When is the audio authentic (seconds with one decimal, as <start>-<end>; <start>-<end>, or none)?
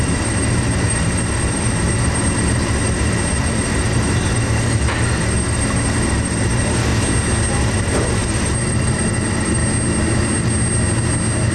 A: 6.9-7.5; 9.6-11.5